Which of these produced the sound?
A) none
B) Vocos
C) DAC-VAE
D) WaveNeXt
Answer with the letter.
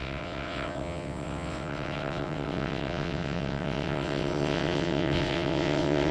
D